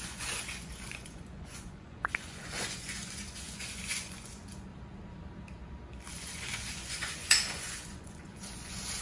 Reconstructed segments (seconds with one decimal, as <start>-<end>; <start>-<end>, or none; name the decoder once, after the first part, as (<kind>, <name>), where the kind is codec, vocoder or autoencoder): 0.0-4.7 (vocoder, Vocos); 6.1-9.0